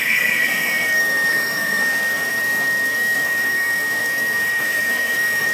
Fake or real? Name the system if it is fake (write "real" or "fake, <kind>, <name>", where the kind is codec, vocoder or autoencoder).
fake, codec, SNAC